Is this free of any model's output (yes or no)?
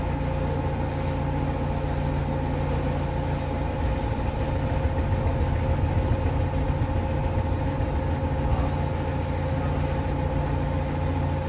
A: yes